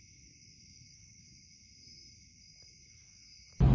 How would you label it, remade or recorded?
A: recorded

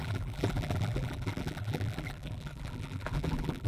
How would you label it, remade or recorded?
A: remade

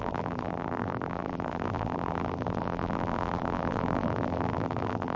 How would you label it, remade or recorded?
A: remade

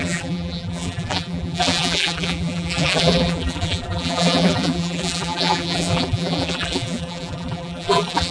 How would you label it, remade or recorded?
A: remade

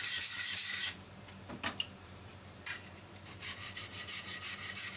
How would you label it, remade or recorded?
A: remade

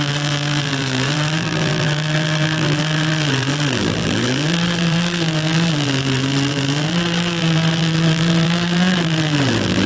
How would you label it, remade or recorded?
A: remade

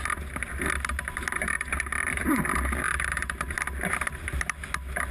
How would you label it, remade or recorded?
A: recorded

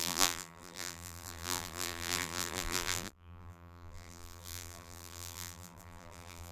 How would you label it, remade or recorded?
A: remade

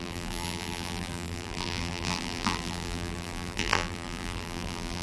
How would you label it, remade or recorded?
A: remade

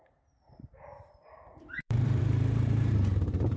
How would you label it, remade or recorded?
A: remade